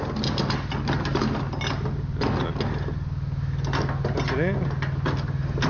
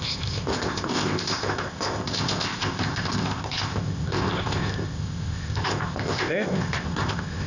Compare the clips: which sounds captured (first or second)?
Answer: first